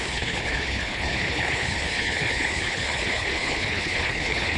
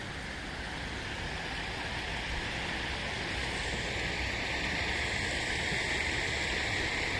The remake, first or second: first